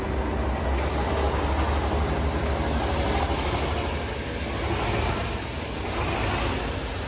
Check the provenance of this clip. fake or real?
real